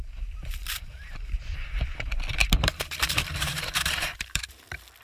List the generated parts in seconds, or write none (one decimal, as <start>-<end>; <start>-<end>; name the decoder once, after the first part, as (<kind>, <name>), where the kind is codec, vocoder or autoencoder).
0.6-1.4 (vocoder, BigVGAN v2); 2.4-4.6